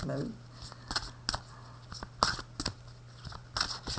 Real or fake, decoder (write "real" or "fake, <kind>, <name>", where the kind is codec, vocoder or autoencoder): real